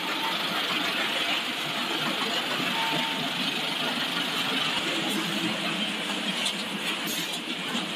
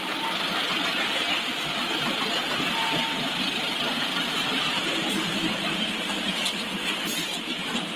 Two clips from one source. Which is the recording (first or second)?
first